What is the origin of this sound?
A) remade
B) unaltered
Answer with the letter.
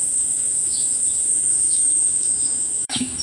A